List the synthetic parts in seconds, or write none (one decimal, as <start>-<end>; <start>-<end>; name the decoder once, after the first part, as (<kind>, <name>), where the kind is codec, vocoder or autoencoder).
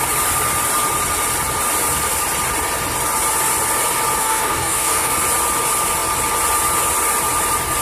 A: 4.2-5.1 (codec, DAC)